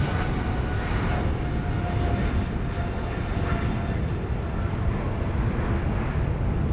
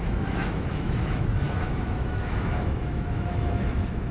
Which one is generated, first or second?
second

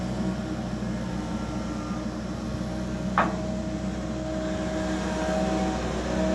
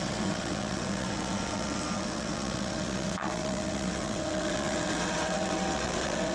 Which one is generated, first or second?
second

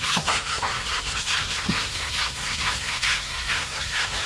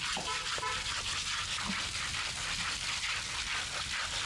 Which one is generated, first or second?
first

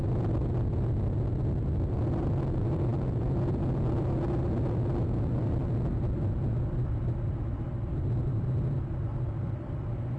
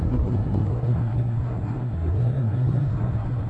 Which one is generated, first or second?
second